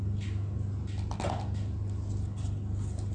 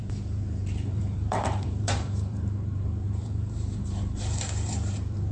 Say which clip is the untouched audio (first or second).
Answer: first